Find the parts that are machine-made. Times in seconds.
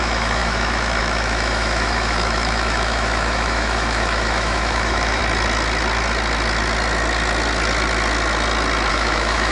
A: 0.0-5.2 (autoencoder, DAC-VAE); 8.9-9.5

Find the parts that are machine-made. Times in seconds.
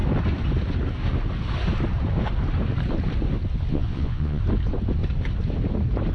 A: 3.7-4.4 (vocoder, Vocos)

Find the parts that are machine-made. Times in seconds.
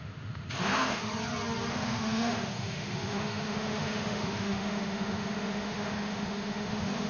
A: 0.0-1.1 (autoencoder, DAC-VAE); 1.7-7.1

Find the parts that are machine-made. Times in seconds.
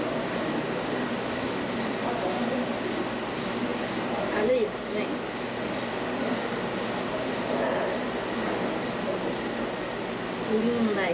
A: none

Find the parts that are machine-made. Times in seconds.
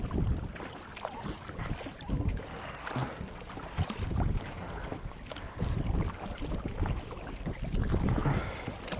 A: none